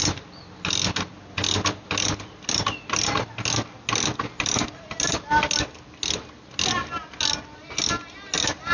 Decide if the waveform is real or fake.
real